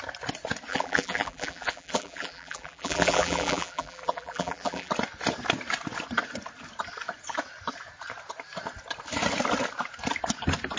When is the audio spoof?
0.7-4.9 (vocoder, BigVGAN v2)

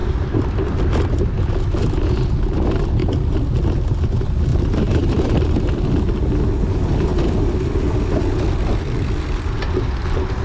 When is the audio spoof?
0.0-0.8 (vocoder, BigVGAN v2); 4.5-5.7

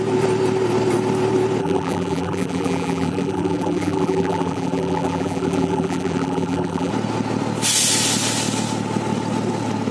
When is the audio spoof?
1.6-6.9 (vocoder, BigVGAN v2)